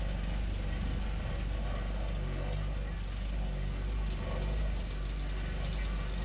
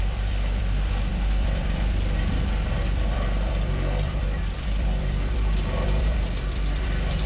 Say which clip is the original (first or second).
first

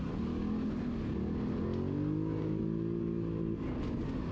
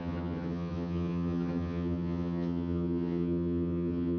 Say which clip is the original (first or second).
first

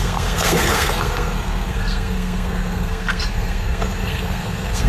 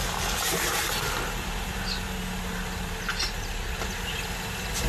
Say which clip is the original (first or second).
second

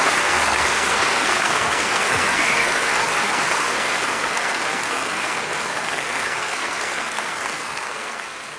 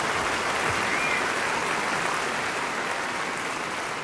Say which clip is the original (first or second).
second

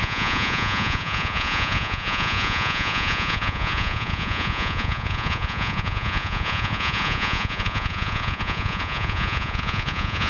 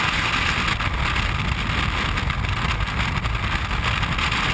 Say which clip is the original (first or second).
second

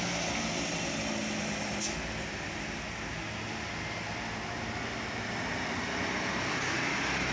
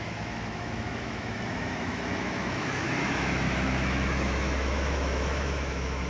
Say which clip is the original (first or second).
first